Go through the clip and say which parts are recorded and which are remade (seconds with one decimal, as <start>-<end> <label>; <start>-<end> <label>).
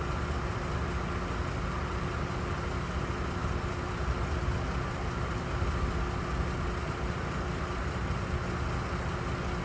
0.0-9.6 recorded